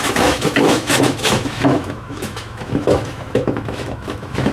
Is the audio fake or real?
fake